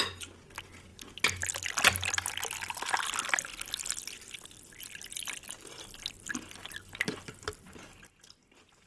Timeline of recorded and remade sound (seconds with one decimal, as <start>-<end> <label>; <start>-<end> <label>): 0.0-8.9 recorded